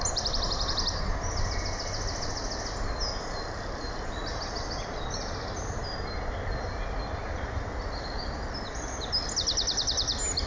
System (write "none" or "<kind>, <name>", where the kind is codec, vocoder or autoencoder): none